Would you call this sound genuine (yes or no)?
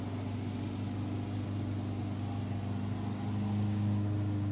yes